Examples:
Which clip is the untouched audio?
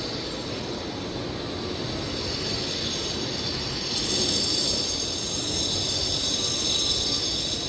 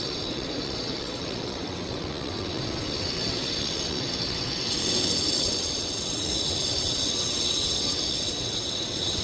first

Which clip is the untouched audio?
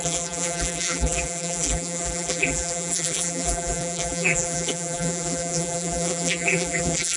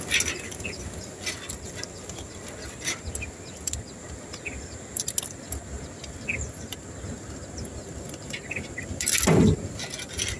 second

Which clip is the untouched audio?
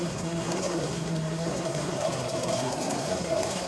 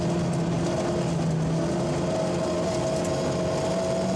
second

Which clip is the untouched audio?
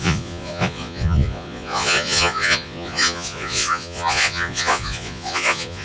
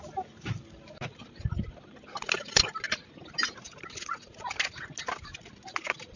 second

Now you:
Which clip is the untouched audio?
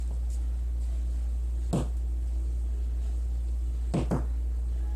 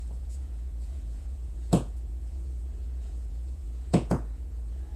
first